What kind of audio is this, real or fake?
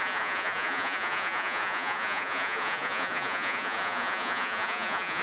fake